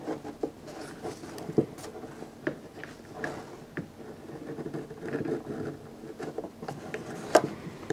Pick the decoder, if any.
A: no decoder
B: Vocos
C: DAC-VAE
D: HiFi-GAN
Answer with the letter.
A